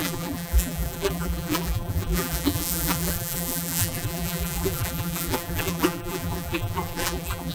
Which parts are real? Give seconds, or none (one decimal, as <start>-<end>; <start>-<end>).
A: none